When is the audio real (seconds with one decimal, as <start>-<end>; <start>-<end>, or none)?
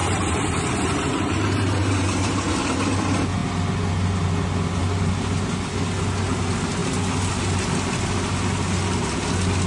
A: 2.6-9.7